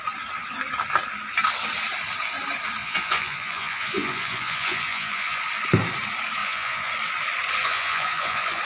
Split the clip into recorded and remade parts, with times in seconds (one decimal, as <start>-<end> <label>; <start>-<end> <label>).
0.0-2.8 recorded; 2.8-5.4 remade; 5.4-6.4 recorded; 6.4-6.9 remade; 6.9-7.6 recorded; 7.6-8.6 remade